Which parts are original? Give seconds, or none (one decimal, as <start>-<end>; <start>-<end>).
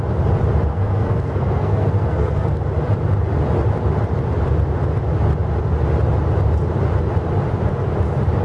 0.0-0.7; 2.6-8.4